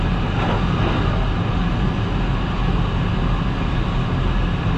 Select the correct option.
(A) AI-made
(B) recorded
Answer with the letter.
B